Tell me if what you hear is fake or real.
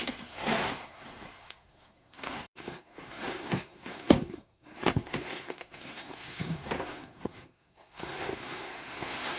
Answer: fake